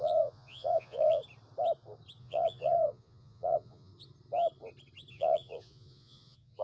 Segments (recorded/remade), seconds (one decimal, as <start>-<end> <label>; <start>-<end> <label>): 0.0-1.2 remade; 1.2-2.2 recorded; 2.2-3.9 remade; 3.9-5.1 recorded; 5.1-6.6 remade